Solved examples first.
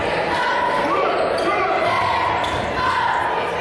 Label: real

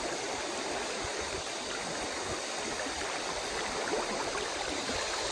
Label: real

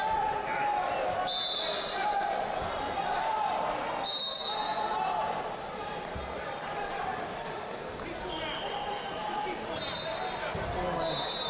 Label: real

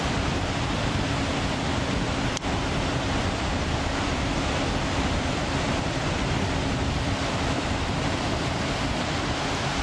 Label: fake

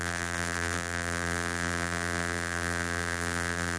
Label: fake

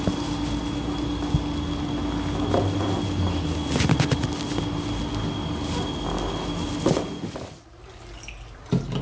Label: real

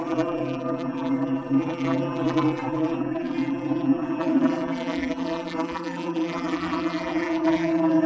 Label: fake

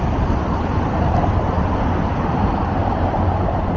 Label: fake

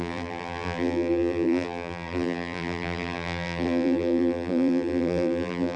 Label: fake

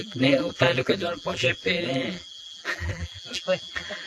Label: fake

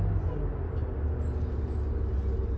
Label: real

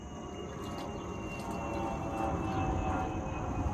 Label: real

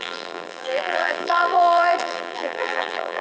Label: fake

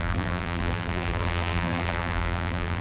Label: fake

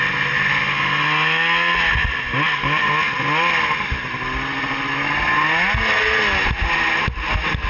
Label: real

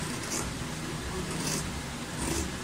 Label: fake